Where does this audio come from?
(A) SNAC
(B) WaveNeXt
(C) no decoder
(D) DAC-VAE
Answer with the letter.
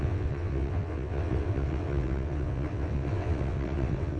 B